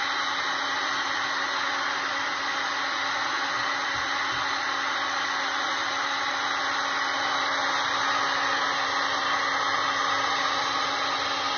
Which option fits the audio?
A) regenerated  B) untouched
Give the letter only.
B